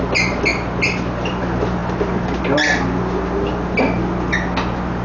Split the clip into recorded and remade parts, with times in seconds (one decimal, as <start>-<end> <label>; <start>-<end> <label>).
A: 0.0-5.0 recorded